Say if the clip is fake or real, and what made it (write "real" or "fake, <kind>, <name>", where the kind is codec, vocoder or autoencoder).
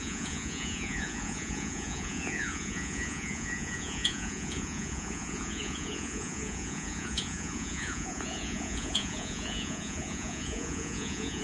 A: fake, vocoder, Vocos